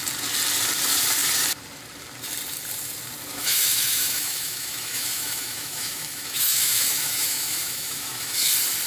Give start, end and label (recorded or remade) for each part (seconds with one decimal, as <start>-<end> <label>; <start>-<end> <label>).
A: 0.0-3.3 recorded; 3.3-8.5 remade; 8.5-8.9 recorded